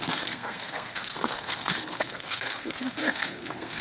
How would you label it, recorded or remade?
remade